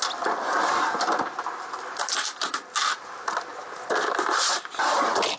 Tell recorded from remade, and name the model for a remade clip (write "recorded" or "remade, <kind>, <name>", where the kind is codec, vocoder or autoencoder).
recorded